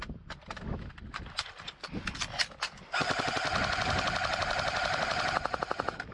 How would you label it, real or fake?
real